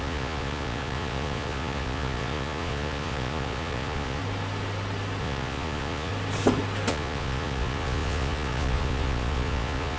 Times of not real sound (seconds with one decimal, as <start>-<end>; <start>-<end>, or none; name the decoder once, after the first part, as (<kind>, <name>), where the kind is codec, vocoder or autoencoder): 0.0-4.2 (vocoder, Vocos); 5.2-6.1; 6.9-10.0